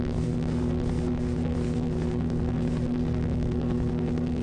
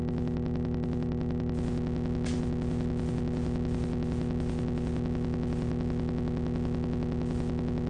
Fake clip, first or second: first